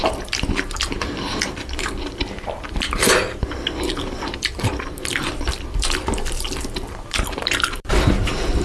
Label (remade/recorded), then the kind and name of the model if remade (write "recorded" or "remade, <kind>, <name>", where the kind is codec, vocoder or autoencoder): remade, vocoder, BigVGAN v2